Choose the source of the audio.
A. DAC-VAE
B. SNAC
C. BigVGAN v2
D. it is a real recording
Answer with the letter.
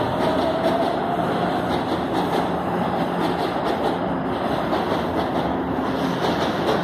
D